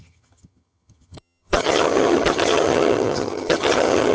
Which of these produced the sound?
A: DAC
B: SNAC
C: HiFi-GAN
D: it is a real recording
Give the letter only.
C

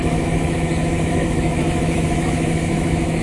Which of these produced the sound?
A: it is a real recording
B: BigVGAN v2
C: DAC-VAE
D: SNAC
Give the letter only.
C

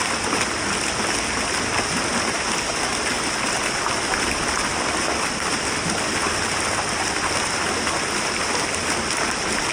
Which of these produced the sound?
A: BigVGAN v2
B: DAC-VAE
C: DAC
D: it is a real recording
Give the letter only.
D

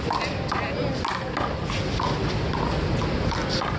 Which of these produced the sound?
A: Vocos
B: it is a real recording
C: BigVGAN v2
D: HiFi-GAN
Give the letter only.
B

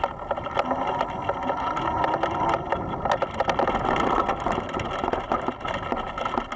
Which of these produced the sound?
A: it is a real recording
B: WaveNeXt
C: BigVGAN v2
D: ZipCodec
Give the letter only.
A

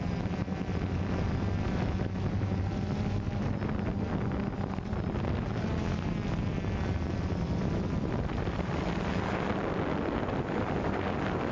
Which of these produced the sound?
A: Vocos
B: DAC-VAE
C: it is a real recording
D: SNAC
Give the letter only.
C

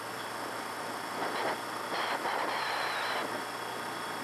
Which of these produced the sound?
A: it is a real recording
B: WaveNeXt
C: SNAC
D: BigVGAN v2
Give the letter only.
A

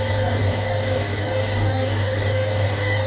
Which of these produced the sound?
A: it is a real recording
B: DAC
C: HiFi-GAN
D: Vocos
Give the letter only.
B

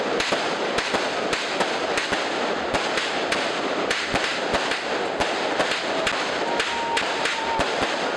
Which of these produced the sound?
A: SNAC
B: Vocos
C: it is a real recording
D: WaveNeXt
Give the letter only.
C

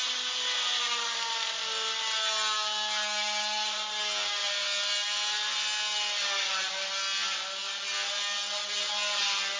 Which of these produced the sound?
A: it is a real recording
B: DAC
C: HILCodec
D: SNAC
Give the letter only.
A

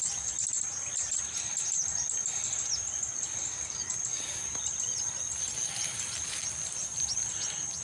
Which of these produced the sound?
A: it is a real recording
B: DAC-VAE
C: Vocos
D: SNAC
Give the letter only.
A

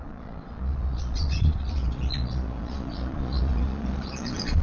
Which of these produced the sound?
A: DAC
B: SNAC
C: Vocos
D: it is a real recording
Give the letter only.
C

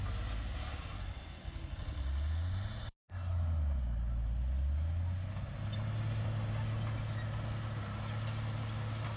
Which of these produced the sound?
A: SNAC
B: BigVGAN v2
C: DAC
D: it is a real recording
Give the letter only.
D